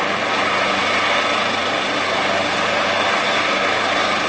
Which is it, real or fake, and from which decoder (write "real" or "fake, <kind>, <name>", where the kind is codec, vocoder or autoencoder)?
real